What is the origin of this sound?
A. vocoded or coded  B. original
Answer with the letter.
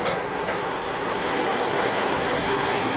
A